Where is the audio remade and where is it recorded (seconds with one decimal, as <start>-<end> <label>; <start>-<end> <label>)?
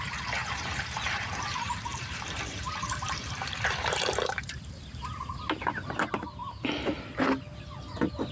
0.0-0.4 recorded; 0.4-5.4 remade; 5.4-8.3 recorded